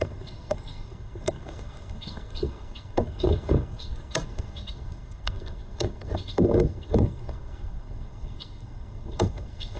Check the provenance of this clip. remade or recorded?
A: remade